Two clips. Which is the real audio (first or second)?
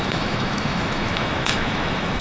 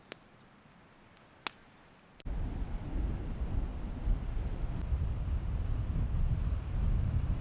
second